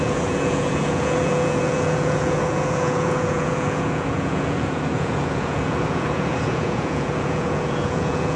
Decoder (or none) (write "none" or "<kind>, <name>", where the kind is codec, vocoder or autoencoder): vocoder, Vocos